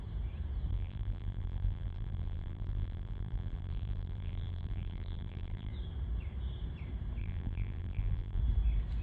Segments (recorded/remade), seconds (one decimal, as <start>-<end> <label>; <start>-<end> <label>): 0.0-0.7 recorded; 0.7-5.7 remade; 5.7-7.2 recorded; 7.2-8.4 remade; 8.4-9.0 recorded